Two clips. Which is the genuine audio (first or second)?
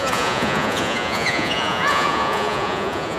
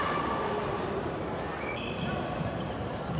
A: second